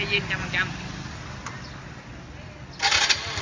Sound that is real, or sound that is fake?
real